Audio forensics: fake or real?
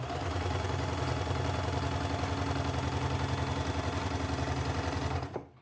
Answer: real